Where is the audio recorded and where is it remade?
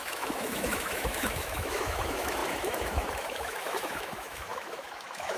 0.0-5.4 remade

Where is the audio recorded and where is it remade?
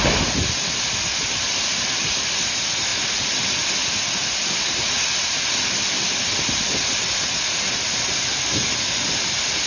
0.0-9.7 recorded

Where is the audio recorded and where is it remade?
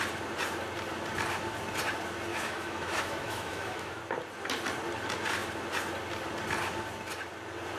0.0-2.3 recorded; 2.3-4.0 remade; 4.0-7.8 recorded